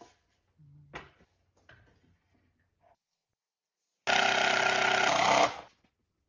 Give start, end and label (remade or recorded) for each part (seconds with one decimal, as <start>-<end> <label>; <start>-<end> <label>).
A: 0.0-6.3 recorded